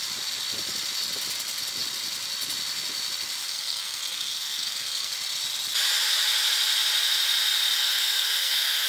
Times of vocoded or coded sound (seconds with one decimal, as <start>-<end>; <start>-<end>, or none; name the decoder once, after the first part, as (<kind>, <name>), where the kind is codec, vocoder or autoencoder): 3.4-5.1 (codec, SNAC); 7.8-8.9